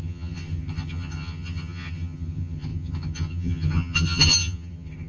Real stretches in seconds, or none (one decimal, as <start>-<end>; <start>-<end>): none